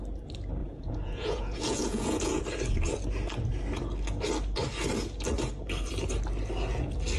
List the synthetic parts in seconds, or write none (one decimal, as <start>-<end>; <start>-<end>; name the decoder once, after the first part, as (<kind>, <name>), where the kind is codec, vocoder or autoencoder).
0.6-2.4 (vocoder, Vocos)